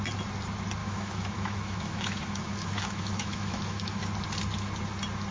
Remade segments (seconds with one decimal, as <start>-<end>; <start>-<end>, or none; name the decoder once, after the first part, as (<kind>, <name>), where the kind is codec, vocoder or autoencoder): 0.8-4.0 (autoencoder, DAC-VAE)